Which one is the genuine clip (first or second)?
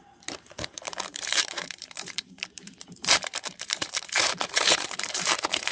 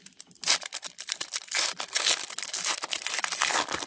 second